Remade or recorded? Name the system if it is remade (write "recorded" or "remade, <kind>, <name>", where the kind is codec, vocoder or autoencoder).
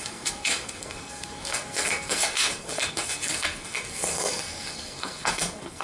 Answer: remade, codec, SNAC